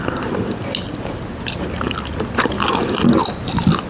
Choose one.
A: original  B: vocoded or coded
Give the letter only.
A